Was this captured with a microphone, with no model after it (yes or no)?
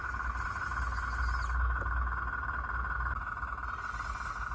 yes